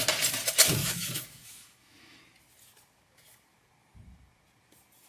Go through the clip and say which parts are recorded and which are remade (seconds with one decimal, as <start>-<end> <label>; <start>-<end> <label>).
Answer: 0.0-0.8 recorded; 0.8-2.2 remade; 2.2-5.1 recorded